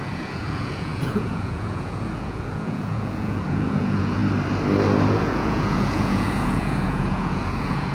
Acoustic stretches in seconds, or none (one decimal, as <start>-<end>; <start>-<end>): 4.2-5.1